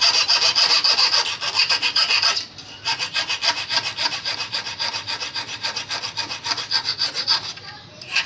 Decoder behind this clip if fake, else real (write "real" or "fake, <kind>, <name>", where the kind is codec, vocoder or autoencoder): real